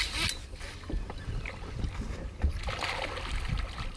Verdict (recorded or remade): recorded